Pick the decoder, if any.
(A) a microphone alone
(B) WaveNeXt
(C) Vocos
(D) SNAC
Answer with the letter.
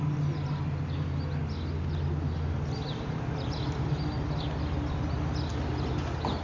A